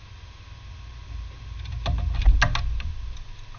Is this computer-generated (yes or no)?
no